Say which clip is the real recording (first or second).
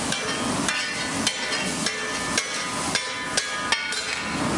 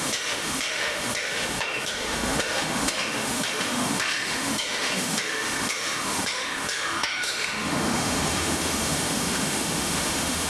first